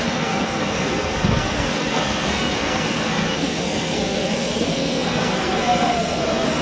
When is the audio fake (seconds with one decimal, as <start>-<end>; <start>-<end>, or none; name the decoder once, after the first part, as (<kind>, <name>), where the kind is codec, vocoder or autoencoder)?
0.0-6.6 (codec, SNAC)

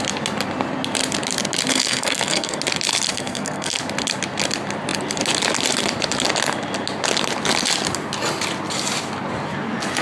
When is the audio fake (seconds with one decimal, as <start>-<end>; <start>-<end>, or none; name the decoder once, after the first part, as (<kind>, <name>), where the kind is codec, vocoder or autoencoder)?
1.7-2.6 (codec, SNAC); 3.1-3.8

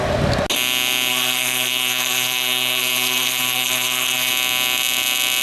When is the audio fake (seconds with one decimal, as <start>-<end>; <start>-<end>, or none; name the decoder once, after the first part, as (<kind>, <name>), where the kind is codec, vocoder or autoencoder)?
1.1-4.3 (codec, SNAC)

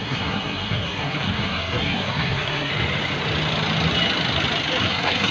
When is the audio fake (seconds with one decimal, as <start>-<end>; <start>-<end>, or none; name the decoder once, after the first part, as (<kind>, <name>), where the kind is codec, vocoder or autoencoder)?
0.0-2.7 (codec, SNAC); 4.8-5.3

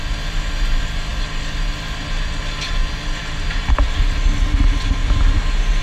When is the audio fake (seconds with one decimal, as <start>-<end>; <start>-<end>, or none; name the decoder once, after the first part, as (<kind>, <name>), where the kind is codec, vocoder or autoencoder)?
none

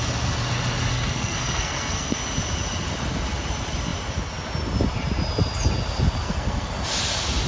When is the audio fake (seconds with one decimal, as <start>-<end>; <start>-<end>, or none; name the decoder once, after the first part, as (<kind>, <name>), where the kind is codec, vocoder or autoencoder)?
0.9-2.2 (codec, SNAC); 6.2-6.7

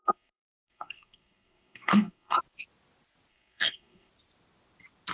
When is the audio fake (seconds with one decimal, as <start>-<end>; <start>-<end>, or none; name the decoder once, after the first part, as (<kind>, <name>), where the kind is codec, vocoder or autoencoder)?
0.0-2.4 (codec, SNAC); 3.3-4.1